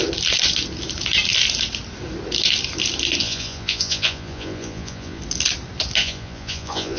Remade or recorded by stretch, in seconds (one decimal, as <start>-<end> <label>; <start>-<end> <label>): 0.0-3.2 recorded; 3.2-5.2 remade; 5.2-6.0 recorded; 6.0-7.0 remade